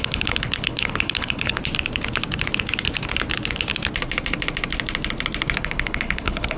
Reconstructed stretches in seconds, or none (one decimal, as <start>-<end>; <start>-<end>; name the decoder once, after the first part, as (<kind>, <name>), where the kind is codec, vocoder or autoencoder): 0.0-1.6 (codec, HILCodec); 5.6-6.6

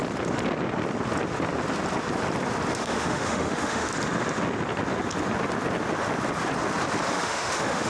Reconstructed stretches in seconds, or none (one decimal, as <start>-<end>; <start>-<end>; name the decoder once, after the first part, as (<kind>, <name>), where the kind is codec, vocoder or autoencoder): 2.7-3.9 (autoencoder, DAC-VAE); 7.1-7.9

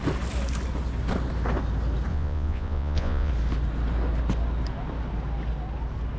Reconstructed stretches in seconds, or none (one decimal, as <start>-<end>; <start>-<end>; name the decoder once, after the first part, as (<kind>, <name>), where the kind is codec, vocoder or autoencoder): 2.1-3.3 (vocoder, Vocos)

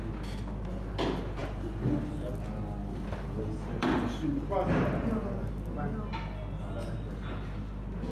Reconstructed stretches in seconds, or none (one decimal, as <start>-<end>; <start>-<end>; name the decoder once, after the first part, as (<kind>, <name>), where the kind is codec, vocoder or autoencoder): 1.4-2.1 (vocoder, BigVGAN v2); 2.8-5.1

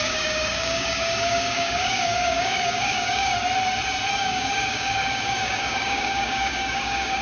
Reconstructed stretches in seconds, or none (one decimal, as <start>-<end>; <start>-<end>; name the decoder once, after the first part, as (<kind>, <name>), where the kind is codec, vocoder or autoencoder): 0.0-3.3 (codec, DAC); 4.1-7.2